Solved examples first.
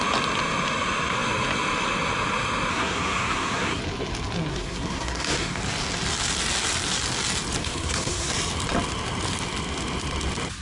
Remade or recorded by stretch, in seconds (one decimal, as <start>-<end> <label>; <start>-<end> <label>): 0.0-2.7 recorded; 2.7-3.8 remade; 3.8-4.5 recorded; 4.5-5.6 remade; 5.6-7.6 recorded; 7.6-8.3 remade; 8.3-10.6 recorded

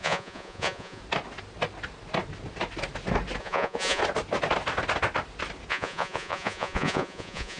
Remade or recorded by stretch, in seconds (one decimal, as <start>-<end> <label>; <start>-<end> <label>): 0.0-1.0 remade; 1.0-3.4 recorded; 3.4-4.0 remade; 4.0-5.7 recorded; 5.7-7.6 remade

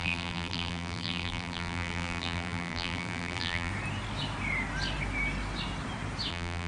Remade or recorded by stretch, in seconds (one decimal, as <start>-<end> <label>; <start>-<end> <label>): 0.0-3.7 remade; 3.7-6.3 recorded; 6.3-6.7 remade

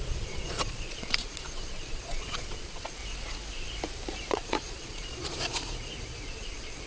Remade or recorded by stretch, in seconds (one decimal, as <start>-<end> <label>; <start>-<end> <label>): 0.0-3.0 remade; 3.0-4.3 recorded; 4.3-6.9 remade